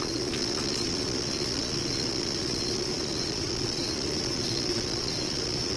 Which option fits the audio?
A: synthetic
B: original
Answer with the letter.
A